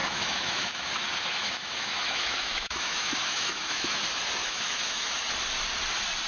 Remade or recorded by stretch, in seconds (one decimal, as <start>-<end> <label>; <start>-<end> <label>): 0.0-0.9 remade; 0.9-1.3 recorded; 1.3-4.0 remade; 4.0-4.4 recorded; 4.4-5.2 remade; 5.2-6.3 recorded